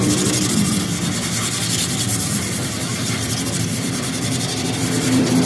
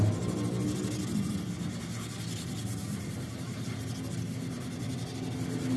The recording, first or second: second